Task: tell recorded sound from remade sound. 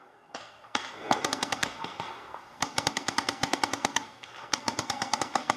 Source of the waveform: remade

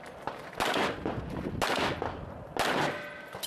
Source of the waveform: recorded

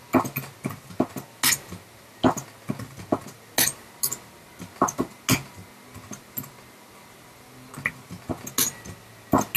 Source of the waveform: recorded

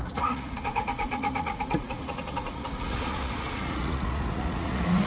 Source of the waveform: remade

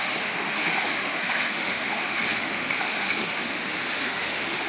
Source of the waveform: remade